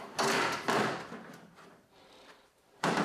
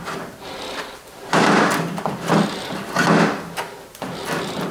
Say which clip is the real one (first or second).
second